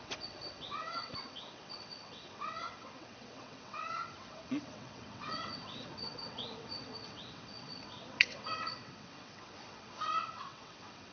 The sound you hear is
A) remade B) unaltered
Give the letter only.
A